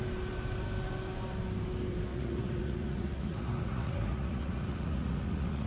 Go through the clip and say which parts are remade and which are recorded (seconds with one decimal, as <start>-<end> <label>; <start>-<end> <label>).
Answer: 0.0-2.1 recorded; 2.1-5.7 remade